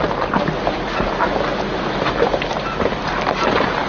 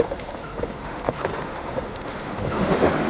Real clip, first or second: first